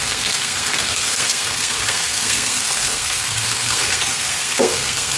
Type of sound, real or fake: fake